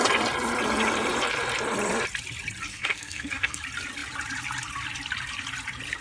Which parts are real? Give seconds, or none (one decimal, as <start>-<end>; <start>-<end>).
0.0-2.7; 3.6-6.0